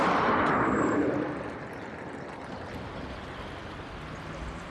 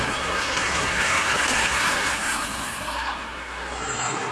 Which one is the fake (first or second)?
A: second